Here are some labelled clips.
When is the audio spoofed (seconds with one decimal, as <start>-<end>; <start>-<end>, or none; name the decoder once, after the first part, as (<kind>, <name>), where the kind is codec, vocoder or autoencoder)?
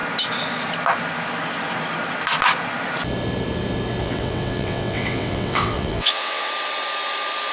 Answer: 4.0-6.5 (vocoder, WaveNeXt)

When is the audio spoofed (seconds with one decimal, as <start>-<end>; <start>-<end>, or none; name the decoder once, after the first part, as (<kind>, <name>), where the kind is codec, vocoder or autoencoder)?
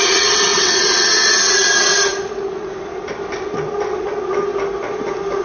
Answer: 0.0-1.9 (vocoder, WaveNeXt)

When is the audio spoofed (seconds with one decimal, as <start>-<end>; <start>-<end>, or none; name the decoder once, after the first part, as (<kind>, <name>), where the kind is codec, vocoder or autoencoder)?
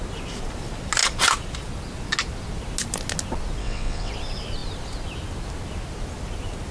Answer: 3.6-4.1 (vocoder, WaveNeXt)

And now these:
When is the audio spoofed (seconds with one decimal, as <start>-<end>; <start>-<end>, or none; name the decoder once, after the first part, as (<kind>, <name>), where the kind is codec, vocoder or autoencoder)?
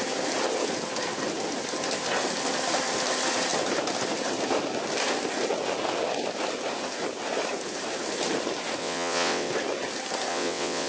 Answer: 8.8-9.5 (vocoder, WaveNeXt); 10.3-10.9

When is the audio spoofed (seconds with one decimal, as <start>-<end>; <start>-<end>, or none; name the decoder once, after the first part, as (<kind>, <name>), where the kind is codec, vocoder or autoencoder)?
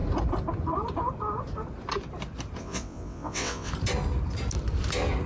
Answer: 2.6-3.7 (vocoder, WaveNeXt)